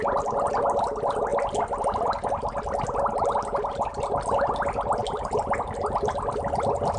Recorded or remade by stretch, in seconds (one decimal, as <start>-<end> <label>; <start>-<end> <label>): 0.0-7.0 recorded